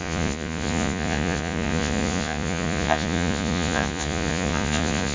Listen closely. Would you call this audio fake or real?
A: fake